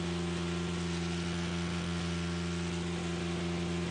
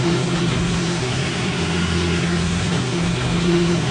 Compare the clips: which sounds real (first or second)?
first